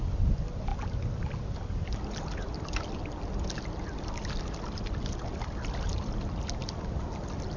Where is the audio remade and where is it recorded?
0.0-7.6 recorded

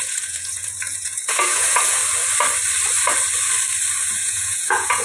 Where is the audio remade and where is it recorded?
0.0-2.0 remade; 2.0-4.1 recorded; 4.1-5.0 remade